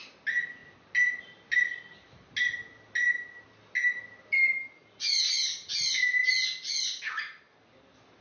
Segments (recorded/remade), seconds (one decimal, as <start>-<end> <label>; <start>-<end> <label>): 0.0-8.2 recorded